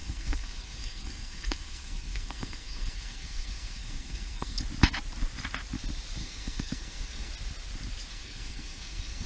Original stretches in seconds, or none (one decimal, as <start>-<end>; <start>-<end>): 4.6-6.2; 7.3-8.1